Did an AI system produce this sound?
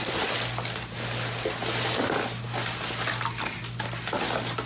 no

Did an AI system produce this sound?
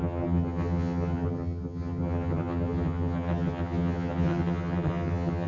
yes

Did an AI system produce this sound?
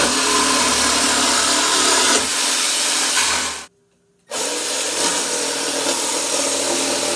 no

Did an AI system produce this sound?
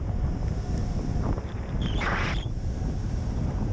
yes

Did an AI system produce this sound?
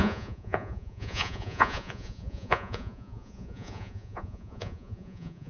yes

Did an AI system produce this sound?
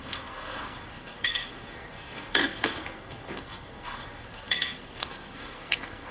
yes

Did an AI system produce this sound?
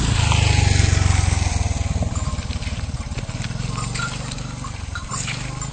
no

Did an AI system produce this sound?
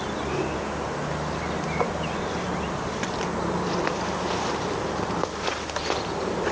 no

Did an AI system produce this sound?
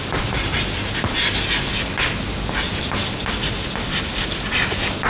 no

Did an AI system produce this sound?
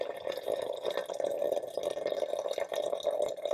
no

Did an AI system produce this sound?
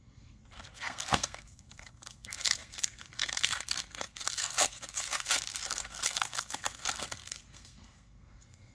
yes